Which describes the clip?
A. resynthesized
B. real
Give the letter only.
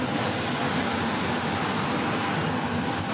B